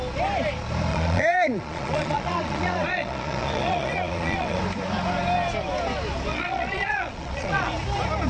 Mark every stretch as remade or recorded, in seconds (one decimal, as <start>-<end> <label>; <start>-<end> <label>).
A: 0.0-0.9 recorded; 0.9-4.6 remade; 4.6-6.3 recorded; 6.3-7.7 remade; 7.7-8.3 recorded